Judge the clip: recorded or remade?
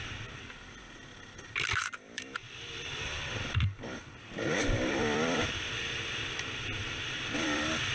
remade